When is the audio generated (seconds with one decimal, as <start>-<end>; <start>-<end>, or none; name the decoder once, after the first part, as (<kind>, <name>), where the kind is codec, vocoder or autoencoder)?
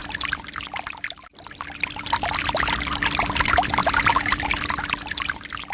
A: 3.8-4.4 (vocoder, BigVGAN v2)